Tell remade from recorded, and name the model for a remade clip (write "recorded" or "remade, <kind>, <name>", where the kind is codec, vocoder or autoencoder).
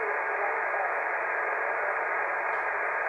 recorded